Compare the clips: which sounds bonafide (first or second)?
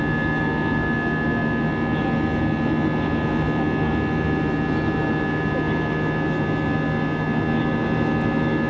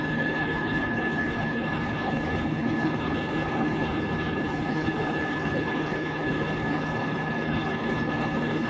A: first